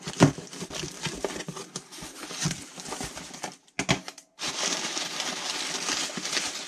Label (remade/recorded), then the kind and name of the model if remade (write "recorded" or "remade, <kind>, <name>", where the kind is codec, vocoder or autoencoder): recorded